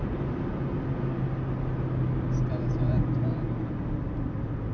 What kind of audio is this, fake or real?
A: real